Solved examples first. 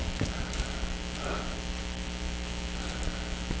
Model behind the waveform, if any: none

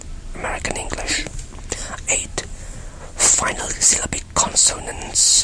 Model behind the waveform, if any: none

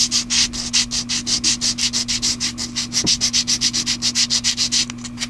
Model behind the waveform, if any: none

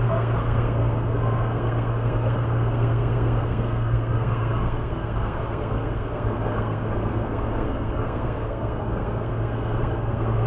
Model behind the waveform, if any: codec, SNAC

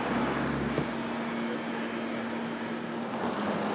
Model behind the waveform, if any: none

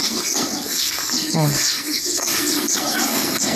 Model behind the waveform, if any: codec, SNAC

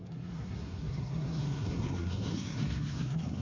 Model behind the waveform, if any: codec, SNAC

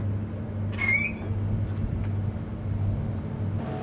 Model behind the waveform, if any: none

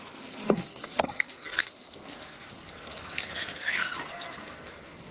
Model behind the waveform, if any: codec, SNAC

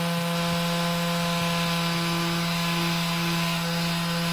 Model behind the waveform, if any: none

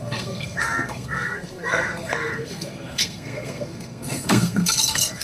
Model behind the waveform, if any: codec, SNAC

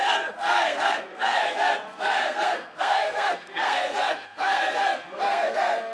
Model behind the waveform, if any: codec, SNAC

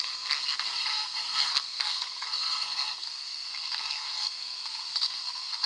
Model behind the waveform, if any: codec, SNAC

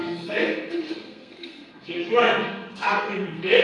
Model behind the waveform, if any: codec, SNAC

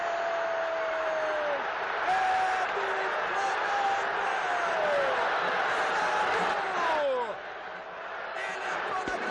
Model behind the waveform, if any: none